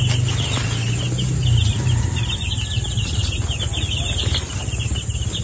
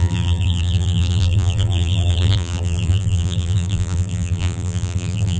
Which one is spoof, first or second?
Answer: second